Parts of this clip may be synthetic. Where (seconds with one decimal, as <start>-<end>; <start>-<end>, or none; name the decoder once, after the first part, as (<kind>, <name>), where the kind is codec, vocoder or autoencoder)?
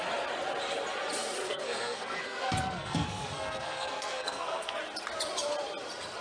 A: 1.4-4.8 (codec, SNAC)